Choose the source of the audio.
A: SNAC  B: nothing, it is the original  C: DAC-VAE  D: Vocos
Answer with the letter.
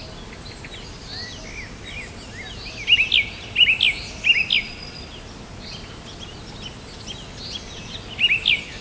B